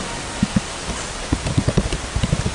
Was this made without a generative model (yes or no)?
yes